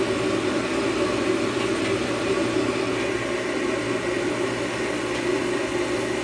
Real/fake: real